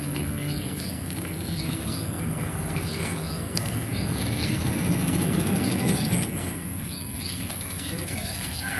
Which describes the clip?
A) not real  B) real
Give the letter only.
A